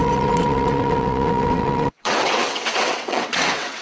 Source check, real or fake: fake